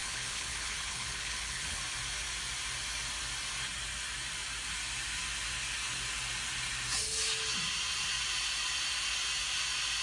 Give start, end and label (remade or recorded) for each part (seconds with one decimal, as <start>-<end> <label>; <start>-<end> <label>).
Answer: 0.0-1.8 remade; 1.8-10.0 recorded